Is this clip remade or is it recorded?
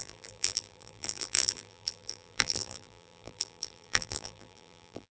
remade